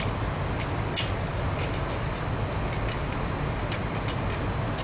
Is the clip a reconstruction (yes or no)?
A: no